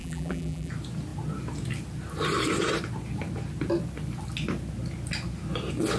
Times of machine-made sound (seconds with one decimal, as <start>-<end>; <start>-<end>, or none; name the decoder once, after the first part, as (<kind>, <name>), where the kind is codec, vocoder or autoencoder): 0.0-0.7 (vocoder, BigVGAN v2)